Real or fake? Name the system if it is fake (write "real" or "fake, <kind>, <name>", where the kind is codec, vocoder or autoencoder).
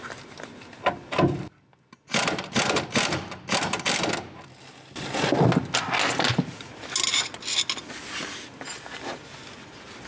real